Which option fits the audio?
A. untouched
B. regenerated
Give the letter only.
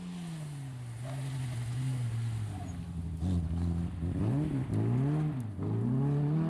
A